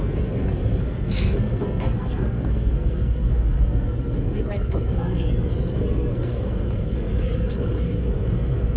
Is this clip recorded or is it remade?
remade